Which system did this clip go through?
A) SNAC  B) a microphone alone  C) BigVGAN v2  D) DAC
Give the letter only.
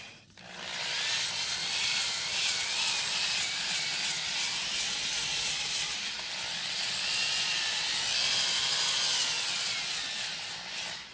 B